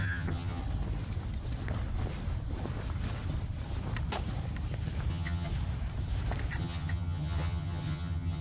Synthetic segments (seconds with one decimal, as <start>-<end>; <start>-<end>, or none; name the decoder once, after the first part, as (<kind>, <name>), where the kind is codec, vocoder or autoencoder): 0.0-0.6 (vocoder, HiFi-GAN); 5.1-5.5; 6.6-8.4